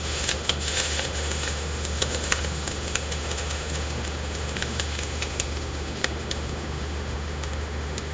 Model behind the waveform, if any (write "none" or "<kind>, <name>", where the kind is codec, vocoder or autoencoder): autoencoder, DAC-VAE